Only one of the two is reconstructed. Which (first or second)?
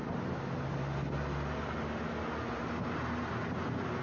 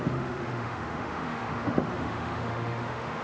second